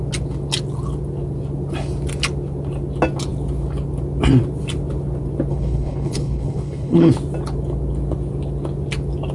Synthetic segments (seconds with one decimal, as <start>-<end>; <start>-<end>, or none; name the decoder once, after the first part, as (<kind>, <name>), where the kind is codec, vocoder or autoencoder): 5.5-7.1 (codec, HILCodec)